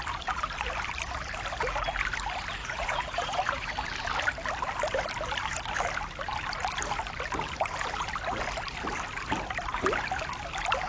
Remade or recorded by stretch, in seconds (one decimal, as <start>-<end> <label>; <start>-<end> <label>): 0.0-2.6 recorded; 2.6-3.7 remade; 3.7-10.9 recorded